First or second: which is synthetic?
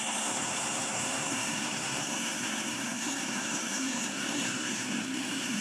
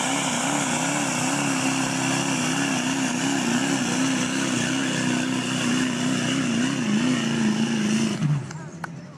first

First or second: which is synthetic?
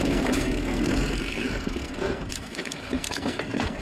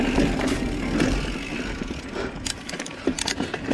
first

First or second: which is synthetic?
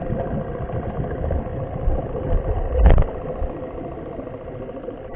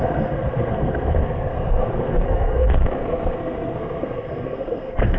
second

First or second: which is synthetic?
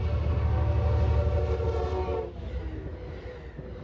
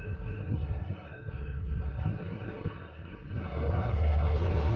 second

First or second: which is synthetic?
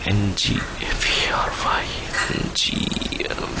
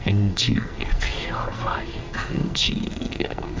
second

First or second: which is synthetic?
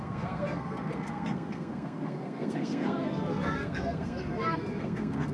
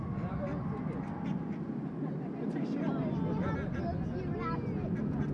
first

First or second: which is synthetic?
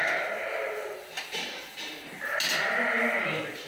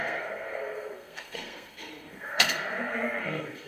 second